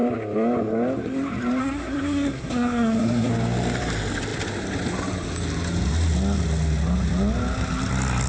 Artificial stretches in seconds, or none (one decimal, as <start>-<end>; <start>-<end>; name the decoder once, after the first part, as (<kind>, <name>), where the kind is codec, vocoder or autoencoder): 1.6-3.3 (codec, SNAC)